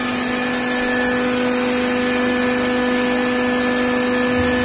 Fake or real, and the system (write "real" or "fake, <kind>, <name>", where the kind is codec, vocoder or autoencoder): real